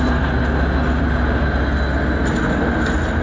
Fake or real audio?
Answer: real